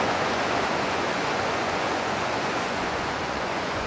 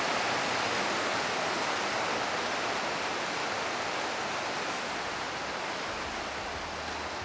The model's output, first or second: first